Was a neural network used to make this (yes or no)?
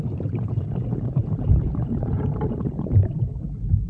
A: yes